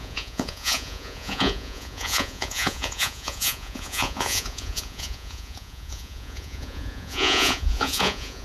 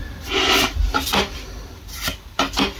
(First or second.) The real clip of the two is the second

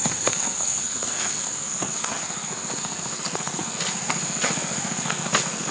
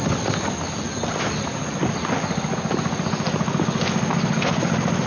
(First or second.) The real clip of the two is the second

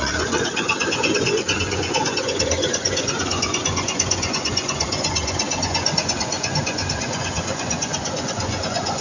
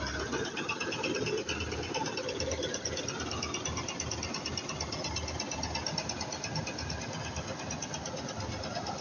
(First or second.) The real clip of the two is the second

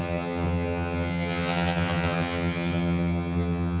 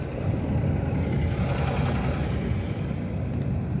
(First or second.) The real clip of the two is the second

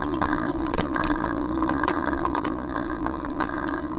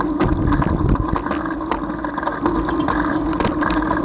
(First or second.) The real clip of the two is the second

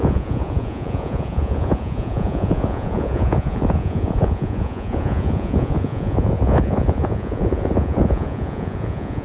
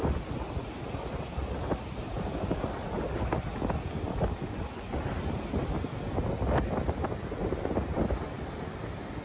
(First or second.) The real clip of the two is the second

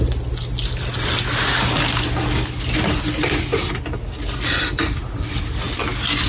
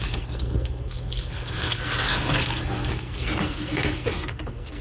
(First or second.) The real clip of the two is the first